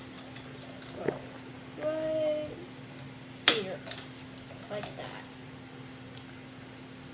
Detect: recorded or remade recorded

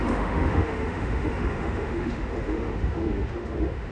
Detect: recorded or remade remade